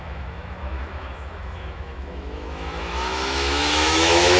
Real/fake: fake